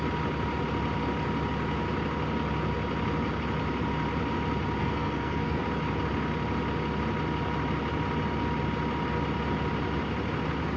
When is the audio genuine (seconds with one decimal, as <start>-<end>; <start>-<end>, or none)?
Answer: 0.0-4.8; 5.6-10.8